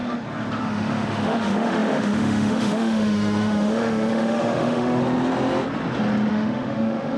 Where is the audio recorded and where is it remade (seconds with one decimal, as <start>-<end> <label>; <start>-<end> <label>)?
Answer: 0.0-0.6 recorded; 0.6-5.0 remade; 5.0-6.3 recorded; 6.3-7.2 remade